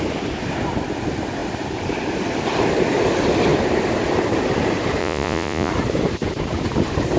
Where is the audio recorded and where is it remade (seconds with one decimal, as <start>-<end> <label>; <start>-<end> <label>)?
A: 0.0-5.0 recorded; 5.0-5.7 remade; 5.7-7.2 recorded